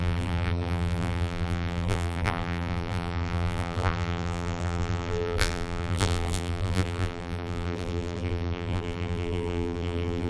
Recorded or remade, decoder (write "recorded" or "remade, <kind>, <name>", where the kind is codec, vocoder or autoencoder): remade, vocoder, BigVGAN v2